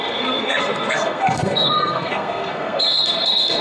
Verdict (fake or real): fake